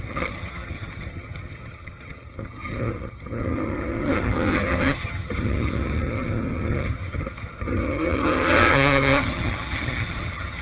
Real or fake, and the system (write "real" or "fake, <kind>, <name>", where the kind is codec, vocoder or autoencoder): fake, vocoder, HiFi-GAN